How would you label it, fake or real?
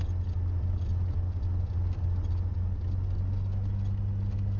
real